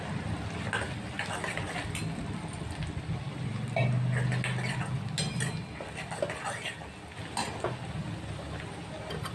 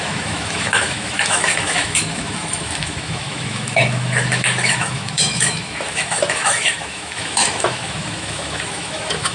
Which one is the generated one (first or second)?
second